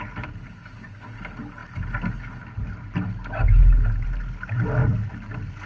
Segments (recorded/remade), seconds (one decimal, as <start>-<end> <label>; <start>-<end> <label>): 0.0-5.7 recorded